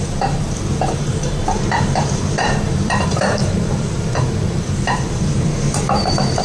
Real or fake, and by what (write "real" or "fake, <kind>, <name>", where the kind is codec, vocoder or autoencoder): fake, vocoder, BigVGAN v2